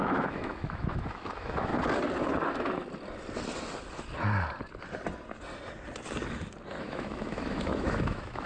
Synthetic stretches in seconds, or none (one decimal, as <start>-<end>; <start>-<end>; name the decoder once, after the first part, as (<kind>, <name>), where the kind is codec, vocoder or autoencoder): 0.0-1.7 (autoencoder, DAC-VAE); 6.8-8.5